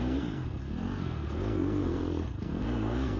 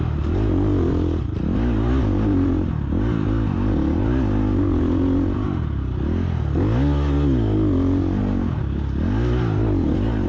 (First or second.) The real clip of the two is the second